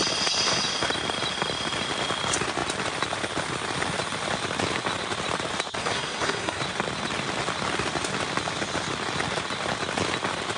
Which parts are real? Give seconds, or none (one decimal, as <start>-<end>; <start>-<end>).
0.0-5.8; 6.6-10.6